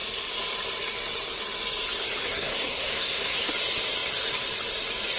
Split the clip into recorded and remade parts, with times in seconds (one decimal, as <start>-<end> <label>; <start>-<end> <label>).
0.0-2.2 recorded; 2.2-3.5 remade; 3.5-5.2 recorded